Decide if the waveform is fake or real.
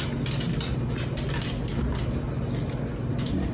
real